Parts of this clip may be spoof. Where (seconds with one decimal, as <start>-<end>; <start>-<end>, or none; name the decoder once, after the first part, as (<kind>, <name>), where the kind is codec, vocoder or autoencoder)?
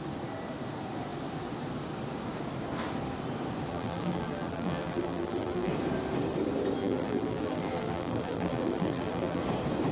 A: 3.7-5.7 (vocoder, BigVGAN v2); 6.8-9.4